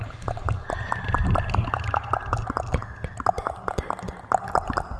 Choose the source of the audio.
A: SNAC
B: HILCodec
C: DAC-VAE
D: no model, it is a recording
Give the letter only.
D